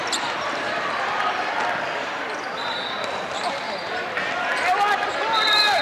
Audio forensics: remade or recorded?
remade